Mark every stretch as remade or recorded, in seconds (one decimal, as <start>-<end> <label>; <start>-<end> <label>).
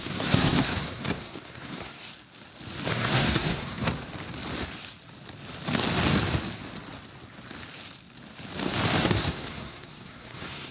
0.0-2.0 remade; 2.0-2.9 recorded; 2.9-3.9 remade; 3.9-9.0 recorded; 9.0-10.7 remade